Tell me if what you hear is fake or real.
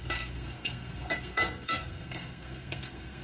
fake